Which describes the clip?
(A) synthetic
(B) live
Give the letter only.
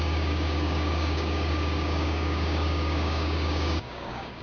A